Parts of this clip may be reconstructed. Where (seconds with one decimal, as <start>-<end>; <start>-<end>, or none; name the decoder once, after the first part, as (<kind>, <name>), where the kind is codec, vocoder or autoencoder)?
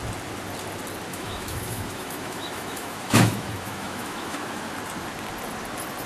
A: 1.1-4.7 (autoencoder, DAC-VAE)